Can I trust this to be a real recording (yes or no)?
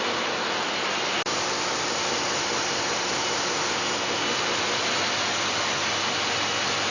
yes